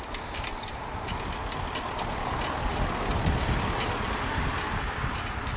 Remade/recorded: recorded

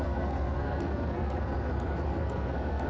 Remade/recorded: remade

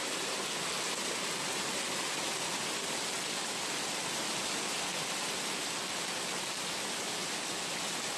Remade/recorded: recorded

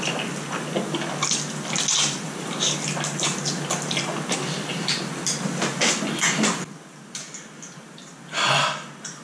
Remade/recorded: recorded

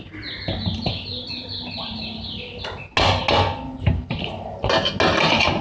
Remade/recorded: recorded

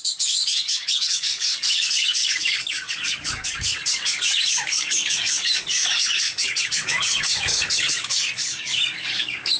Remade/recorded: remade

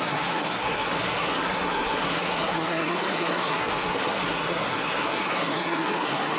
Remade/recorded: remade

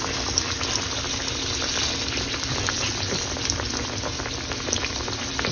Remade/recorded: recorded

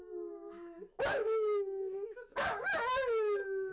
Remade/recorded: remade